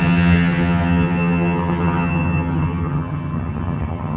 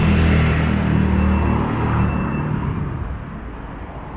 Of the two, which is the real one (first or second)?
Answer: second